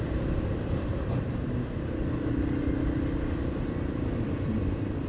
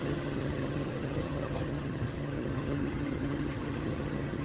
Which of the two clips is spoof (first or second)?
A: second